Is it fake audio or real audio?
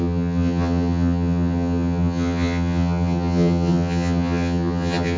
fake